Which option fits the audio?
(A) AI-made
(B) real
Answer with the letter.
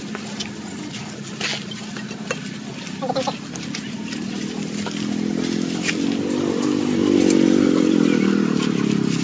B